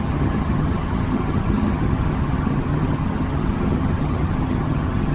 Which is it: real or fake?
fake